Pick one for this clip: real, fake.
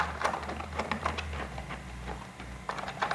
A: real